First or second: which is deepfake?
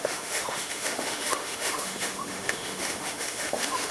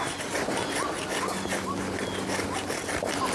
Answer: first